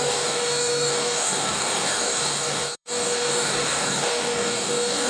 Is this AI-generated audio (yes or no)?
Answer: yes